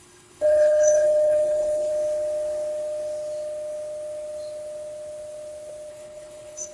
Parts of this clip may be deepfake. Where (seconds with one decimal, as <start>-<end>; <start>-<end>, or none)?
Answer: 0.0-1.9; 5.9-6.7